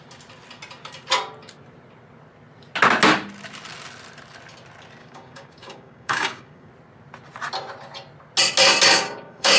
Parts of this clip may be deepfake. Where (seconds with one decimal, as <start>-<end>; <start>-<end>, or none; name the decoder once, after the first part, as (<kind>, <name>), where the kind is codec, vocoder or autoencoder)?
5.0-6.7 (codec, DAC); 8.9-9.6